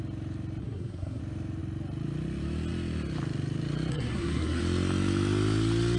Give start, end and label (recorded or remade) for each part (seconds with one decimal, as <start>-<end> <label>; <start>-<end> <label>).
0.0-0.6 recorded; 0.6-1.2 remade; 1.2-3.9 recorded; 3.9-4.6 remade; 4.6-6.0 recorded